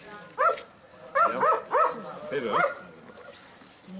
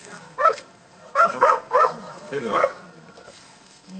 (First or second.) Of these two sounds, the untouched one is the first